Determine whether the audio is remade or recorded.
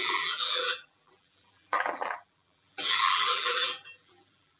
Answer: remade